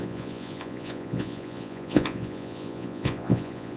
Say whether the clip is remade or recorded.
remade